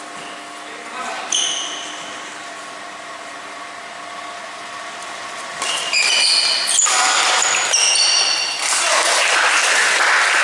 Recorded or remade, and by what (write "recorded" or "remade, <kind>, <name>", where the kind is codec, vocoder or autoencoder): recorded